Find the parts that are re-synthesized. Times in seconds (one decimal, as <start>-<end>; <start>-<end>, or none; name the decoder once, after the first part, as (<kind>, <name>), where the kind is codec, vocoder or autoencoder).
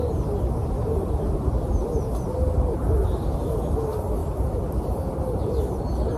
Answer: 4.2-5.4 (vocoder, BigVGAN v2)